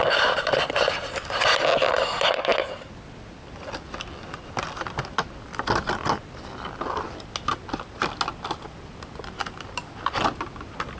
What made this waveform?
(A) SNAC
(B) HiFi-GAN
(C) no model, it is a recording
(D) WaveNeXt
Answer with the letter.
C